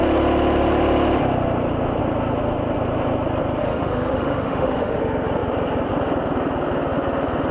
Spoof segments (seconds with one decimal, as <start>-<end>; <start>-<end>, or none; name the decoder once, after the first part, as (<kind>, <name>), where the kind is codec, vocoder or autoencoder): 3.6-5.0 (autoencoder, DAC-VAE)